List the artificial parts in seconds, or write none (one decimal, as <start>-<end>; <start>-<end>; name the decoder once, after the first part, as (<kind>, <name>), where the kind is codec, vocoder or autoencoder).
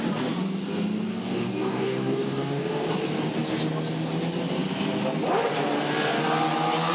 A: 1.1-2.9 (codec, DAC)